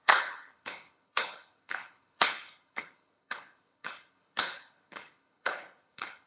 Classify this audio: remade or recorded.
remade